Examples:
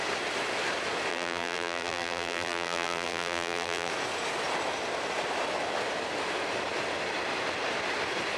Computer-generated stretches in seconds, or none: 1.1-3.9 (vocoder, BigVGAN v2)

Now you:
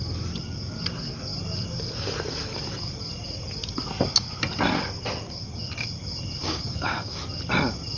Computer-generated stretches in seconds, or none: 6.4-7.2 (codec, DAC)

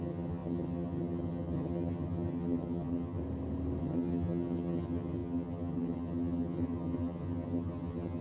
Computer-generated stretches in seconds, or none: 0.0-3.2 (vocoder, HiFi-GAN); 3.8-8.2

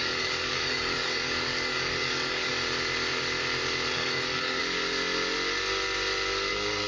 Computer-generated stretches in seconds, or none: 0.0-2.5 (codec, DAC); 3.9-4.6; 6.5-6.9

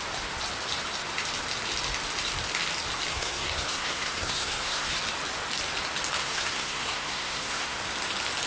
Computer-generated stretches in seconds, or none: 3.1-5.0 (codec, SNAC); 6.2-7.8

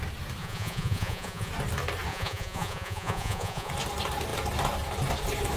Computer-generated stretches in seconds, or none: 0.4-1.5 (vocoder, Vocos); 2.1-3.7